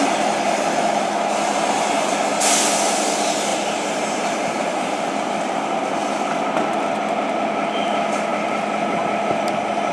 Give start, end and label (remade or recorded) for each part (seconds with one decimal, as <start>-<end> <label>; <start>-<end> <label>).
0.0-3.5 recorded; 3.5-5.0 remade; 5.0-9.9 recorded